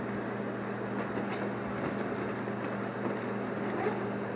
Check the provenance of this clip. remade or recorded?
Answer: recorded